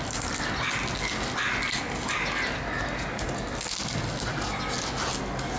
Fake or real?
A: real